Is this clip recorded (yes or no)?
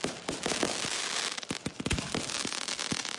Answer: yes